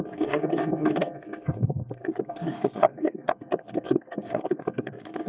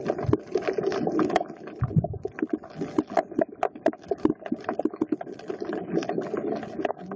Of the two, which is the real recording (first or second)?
second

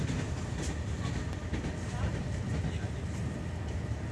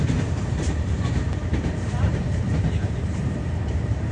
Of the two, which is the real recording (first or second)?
first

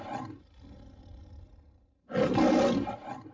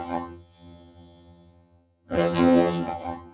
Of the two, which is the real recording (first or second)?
first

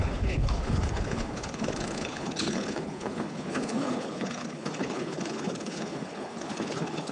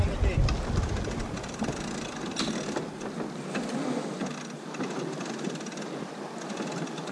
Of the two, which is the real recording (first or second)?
second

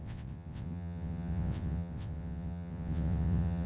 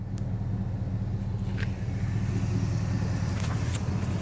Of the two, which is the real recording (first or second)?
second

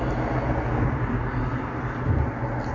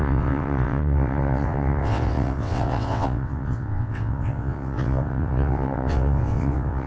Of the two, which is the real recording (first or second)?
first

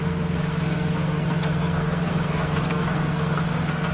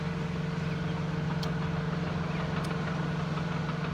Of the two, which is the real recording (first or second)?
second